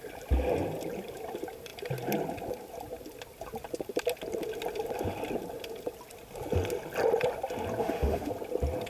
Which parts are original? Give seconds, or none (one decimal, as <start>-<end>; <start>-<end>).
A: 0.0-7.8; 8.3-8.9